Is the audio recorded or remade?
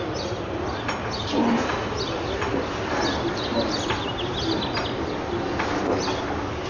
recorded